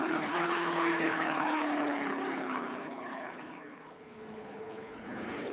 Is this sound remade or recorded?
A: remade